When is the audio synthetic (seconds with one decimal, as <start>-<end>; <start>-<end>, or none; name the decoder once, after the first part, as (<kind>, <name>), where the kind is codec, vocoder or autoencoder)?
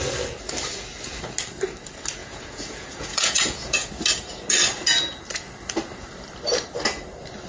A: 2.2-3.9 (vocoder, Vocos)